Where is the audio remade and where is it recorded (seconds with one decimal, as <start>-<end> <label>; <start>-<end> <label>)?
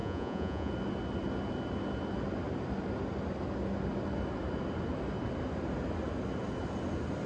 0.0-0.7 remade; 0.7-7.3 recorded